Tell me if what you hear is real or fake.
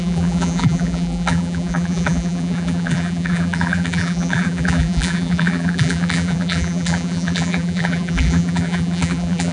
fake